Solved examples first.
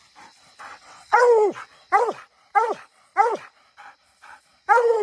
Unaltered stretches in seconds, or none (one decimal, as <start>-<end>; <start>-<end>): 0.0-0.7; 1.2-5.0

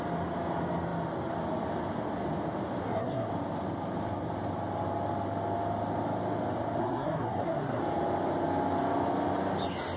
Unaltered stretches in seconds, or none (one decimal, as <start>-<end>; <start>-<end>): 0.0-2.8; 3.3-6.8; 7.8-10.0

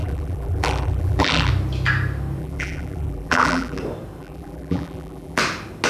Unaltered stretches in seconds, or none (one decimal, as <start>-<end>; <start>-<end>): 1.5-2.4; 3.8-4.2; 5.4-5.9

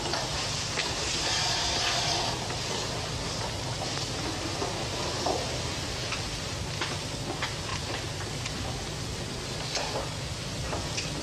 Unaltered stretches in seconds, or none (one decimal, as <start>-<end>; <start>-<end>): 0.0-0.8; 1.3-11.2

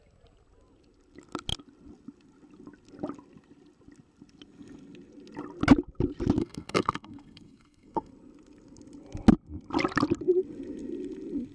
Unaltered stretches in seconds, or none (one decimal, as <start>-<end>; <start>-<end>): 0.0-6.4; 8.1-11.5

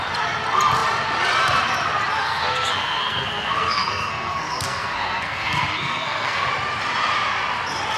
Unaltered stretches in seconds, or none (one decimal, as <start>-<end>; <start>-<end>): 0.0-2.2; 6.5-8.0